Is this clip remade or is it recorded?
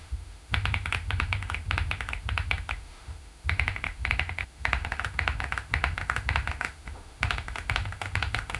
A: remade